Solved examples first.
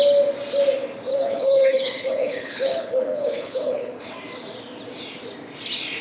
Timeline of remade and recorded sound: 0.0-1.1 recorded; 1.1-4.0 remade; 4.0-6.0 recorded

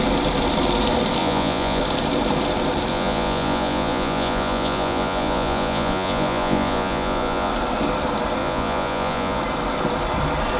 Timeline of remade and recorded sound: 0.0-1.2 recorded; 1.2-1.8 remade; 1.8-2.9 recorded; 2.9-7.5 remade; 7.5-8.4 recorded; 8.4-9.4 remade; 9.4-10.6 recorded

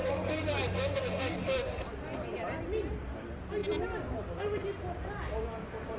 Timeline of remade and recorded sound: 0.0-6.0 recorded

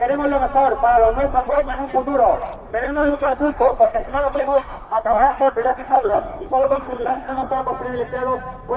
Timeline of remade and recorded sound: 0.0-1.3 recorded; 1.3-1.9 remade; 1.9-2.7 recorded; 2.7-7.5 remade; 7.5-8.8 recorded